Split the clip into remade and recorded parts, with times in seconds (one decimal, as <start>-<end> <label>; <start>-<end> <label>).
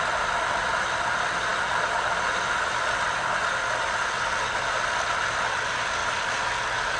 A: 0.0-7.0 recorded